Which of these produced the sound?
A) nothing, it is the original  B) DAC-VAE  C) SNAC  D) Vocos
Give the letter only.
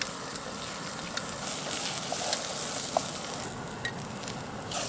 A